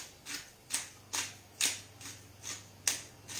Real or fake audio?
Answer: real